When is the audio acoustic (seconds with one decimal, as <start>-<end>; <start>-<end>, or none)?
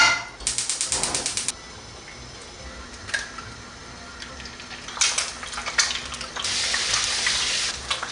0.0-8.1